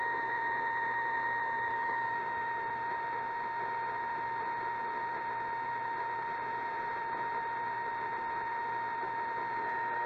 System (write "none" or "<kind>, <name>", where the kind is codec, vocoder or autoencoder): none